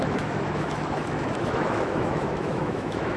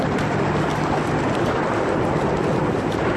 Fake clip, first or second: first